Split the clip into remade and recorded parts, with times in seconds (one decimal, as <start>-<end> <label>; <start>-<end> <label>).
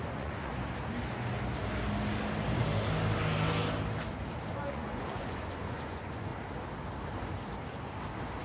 0.0-0.5 remade; 0.5-4.5 recorded; 4.5-6.3 remade; 6.3-8.4 recorded